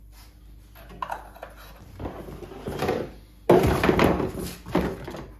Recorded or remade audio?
recorded